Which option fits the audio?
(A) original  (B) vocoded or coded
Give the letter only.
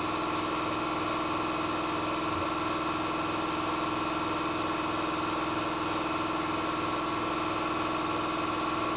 A